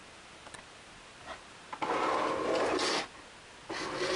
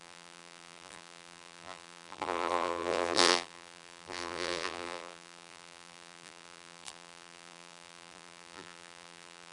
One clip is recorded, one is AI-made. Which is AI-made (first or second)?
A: second